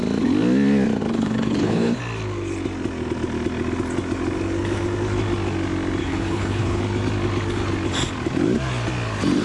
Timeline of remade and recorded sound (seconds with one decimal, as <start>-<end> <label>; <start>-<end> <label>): 0.0-1.1 recorded; 1.1-2.0 remade; 2.0-6.0 recorded; 6.0-6.8 remade; 6.8-9.4 recorded